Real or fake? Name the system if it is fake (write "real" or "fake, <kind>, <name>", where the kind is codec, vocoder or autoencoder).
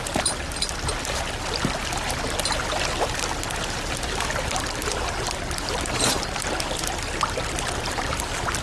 real